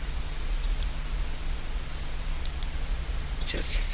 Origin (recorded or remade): remade